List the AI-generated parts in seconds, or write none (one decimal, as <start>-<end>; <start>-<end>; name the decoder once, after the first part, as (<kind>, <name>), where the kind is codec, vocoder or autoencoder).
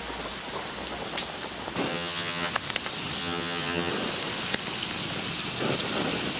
1.9-2.5 (vocoder, HiFi-GAN); 3.2-3.9